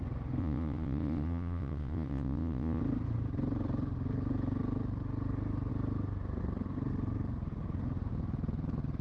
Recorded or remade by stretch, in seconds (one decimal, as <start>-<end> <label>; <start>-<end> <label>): 0.0-0.4 recorded; 0.4-2.8 remade; 2.8-9.0 recorded